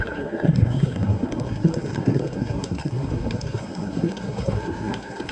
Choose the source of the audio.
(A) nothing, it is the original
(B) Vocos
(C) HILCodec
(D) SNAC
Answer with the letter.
D